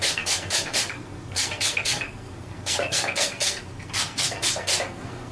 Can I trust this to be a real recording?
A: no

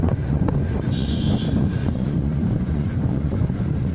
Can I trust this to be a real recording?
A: no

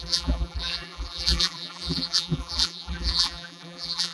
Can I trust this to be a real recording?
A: no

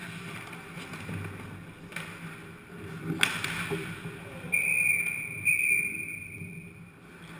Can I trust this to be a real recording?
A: yes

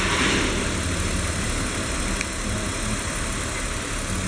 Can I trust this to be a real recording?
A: yes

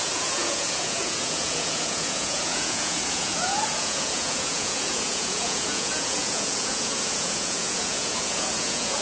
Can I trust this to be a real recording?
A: no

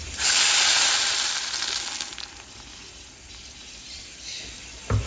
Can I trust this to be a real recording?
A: no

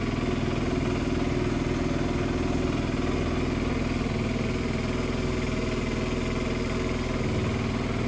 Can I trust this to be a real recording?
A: yes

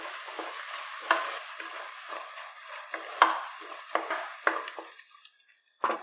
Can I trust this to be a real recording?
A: yes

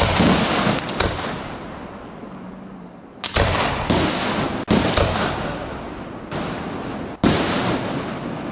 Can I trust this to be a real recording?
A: yes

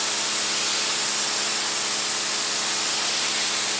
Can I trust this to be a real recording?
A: yes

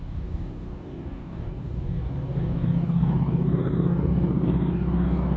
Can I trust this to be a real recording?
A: no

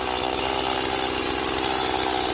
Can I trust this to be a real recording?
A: yes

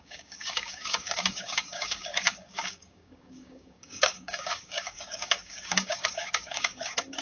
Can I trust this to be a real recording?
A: no